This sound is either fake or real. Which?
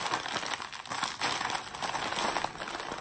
real